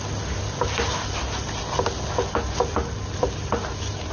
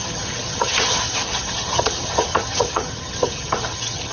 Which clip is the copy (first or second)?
second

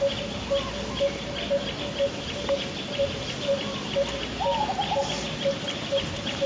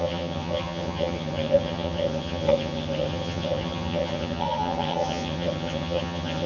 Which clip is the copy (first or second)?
second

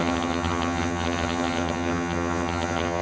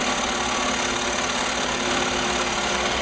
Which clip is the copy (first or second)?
first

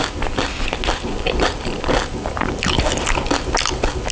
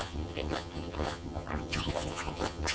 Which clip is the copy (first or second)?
second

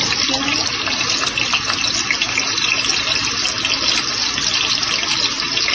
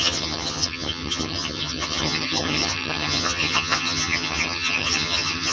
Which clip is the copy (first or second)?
second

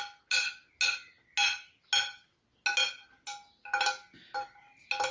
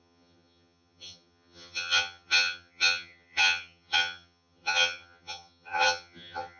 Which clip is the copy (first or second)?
second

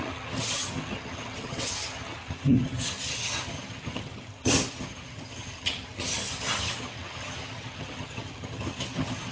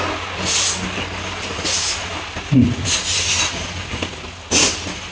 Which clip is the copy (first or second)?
first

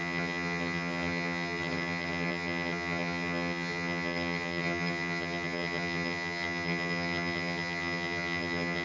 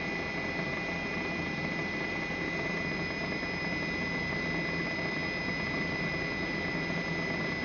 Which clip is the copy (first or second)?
first